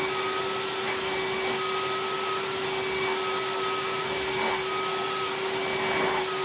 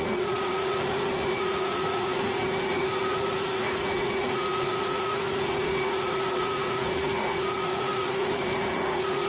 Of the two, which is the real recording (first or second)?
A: first